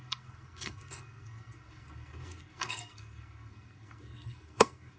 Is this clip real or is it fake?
fake